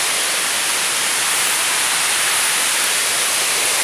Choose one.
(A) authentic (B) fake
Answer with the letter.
A